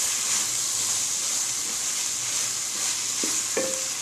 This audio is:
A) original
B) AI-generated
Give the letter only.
A